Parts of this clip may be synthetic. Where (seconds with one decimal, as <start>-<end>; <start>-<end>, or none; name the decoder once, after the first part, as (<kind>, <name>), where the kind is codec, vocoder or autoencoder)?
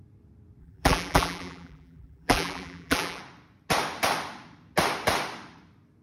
0.6-3.2 (vocoder, BigVGAN v2)